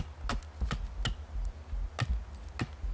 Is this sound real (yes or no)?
yes